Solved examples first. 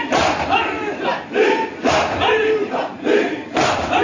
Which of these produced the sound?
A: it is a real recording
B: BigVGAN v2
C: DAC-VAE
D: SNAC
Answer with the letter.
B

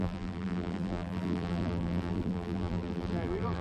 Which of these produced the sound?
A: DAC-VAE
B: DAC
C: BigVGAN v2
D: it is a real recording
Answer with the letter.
C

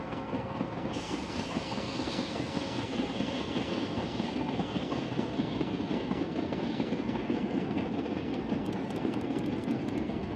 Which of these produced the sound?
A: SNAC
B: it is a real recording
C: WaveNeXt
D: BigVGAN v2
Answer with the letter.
A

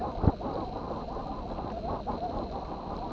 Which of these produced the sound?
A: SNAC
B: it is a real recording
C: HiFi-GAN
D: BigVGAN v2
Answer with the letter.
B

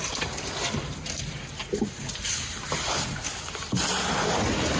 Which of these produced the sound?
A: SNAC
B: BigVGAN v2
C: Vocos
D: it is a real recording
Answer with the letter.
D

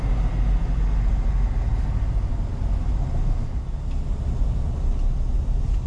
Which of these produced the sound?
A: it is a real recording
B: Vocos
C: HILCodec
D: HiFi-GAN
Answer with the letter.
A